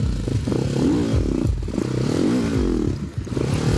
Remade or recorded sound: recorded